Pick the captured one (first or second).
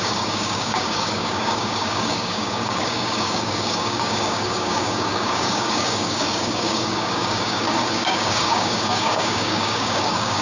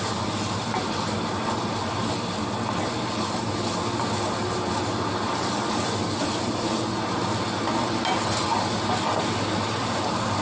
second